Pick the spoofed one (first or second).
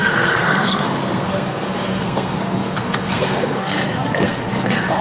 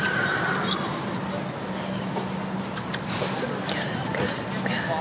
first